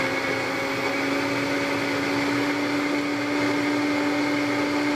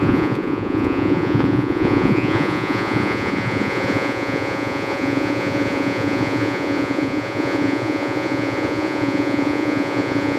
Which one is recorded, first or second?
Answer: first